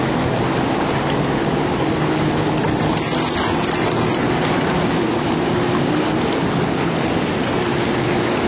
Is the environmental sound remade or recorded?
recorded